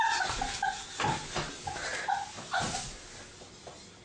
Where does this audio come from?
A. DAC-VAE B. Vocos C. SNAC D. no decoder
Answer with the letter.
D